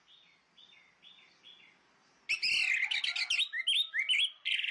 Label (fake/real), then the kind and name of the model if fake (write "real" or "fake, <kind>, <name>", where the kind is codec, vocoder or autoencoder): real